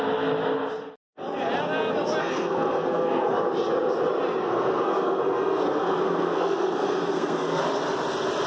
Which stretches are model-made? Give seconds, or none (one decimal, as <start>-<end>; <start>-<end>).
2.2-3.3; 4.4-7.6